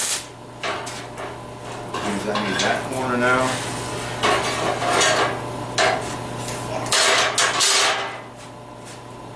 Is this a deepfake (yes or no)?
no